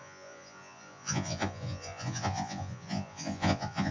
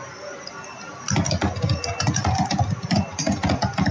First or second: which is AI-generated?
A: first